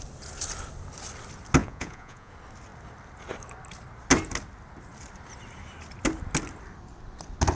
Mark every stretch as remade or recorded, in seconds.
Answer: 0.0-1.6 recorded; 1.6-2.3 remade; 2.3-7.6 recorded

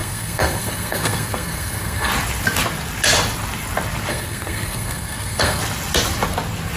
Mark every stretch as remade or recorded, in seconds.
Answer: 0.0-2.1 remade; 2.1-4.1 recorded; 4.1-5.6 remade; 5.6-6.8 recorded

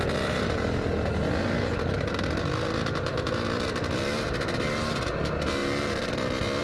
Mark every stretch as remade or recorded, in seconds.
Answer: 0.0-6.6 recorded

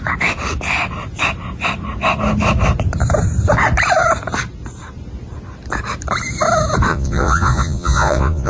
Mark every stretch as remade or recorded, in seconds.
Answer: 0.0-6.9 recorded; 6.9-8.5 remade